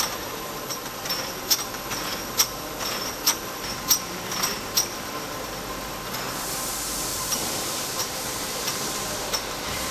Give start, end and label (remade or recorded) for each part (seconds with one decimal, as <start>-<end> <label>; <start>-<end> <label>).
0.0-7.1 recorded; 7.1-9.9 remade